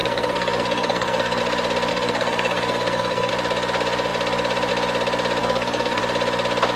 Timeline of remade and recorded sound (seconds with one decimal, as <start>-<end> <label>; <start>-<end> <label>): 0.0-1.4 remade; 1.4-1.9 recorded; 1.9-3.3 remade; 3.3-5.4 recorded; 5.4-6.0 remade; 6.0-6.8 recorded

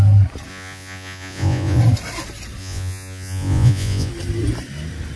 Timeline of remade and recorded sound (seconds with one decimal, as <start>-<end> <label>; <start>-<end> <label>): 0.0-0.5 recorded; 0.5-1.8 remade; 1.8-2.6 recorded; 2.6-4.1 remade; 4.1-5.2 recorded

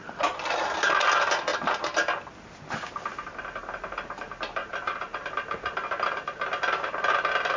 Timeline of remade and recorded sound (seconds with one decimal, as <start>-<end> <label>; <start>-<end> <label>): 0.0-4.6 recorded; 4.6-5.2 remade; 5.2-7.6 recorded

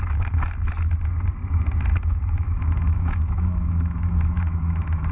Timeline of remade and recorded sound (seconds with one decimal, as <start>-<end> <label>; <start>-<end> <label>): 0.0-1.9 recorded; 1.9-5.1 remade